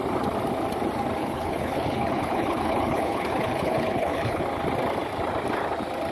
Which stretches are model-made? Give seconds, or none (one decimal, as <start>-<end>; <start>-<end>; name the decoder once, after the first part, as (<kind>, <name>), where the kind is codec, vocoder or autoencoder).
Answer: 1.2-4.4 (codec, HILCodec)